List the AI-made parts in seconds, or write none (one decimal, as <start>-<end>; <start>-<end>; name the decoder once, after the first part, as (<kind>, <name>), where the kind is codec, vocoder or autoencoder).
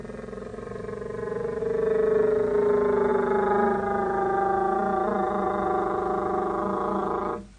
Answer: 0.5-1.6 (vocoder, BigVGAN v2)